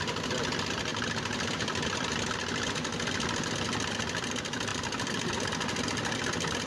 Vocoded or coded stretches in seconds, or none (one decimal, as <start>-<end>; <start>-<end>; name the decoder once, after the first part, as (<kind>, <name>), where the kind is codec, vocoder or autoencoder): 0.9-1.5 (vocoder, BigVGAN v2); 4.7-5.3